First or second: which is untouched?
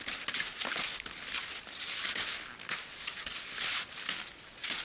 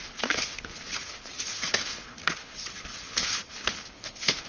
first